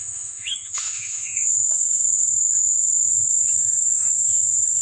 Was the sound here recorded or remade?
remade